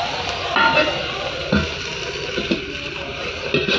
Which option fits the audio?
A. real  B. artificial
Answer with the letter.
A